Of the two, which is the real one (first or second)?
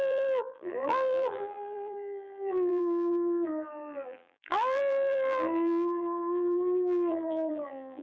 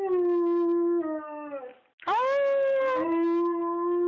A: second